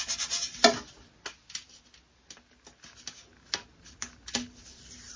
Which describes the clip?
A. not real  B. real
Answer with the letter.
B